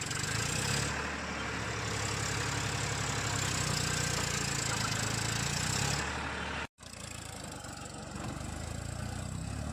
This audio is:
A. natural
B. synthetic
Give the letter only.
A